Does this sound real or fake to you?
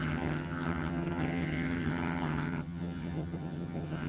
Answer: fake